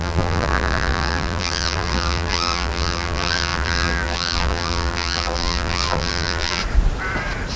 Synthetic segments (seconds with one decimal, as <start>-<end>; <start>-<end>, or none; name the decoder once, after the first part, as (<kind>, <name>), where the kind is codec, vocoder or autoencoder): 0.0-6.6 (vocoder, BigVGAN v2)

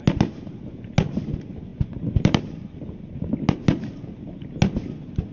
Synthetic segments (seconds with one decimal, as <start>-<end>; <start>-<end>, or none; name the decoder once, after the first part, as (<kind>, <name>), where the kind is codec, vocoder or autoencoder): 1.7-2.4 (vocoder, BigVGAN v2)

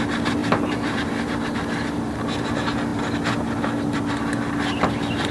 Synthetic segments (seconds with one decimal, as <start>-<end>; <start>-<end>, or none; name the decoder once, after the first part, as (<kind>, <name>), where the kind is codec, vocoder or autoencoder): 0.4-1.2 (vocoder, BigVGAN v2)